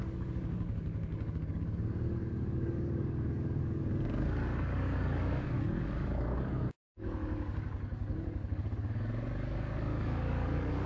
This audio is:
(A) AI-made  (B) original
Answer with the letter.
A